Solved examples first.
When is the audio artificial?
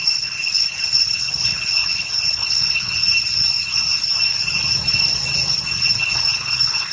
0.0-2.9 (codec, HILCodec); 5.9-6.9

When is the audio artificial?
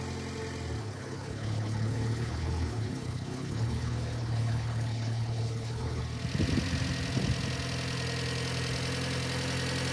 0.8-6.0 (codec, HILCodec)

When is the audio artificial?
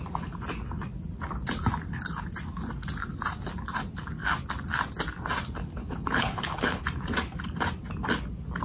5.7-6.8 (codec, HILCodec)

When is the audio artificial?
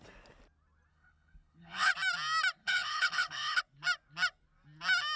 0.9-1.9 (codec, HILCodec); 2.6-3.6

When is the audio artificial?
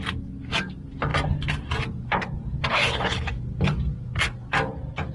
2.7-3.3 (codec, HILCodec)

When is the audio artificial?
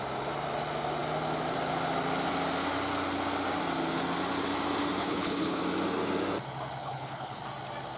5.0-5.6 (codec, HILCodec); 6.8-7.4